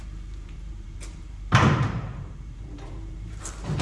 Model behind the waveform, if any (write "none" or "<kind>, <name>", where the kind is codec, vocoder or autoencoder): vocoder, BigVGAN v2